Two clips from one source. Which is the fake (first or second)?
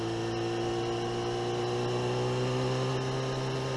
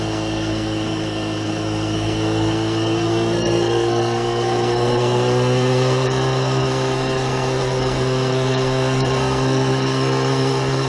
second